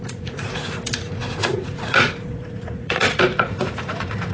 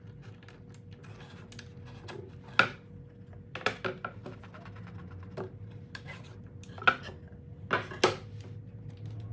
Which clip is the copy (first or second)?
first